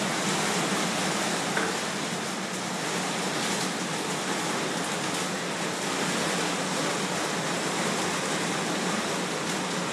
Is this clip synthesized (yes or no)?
no